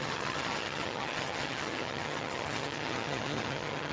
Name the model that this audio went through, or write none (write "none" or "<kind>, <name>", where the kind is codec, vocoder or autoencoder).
vocoder, HiFi-GAN